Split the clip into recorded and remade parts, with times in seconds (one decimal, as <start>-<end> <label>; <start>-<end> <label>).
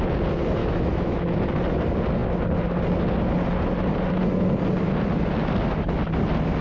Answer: 0.0-0.6 recorded; 0.6-1.5 remade; 1.5-6.6 recorded